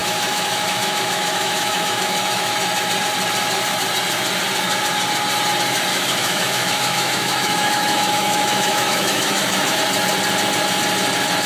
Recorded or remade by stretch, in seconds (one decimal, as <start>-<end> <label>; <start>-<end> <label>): 0.0-2.5 remade; 2.5-5.9 recorded; 5.9-9.8 remade; 9.8-11.5 recorded